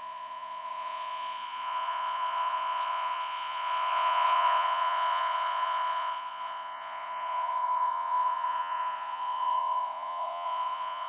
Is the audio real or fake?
fake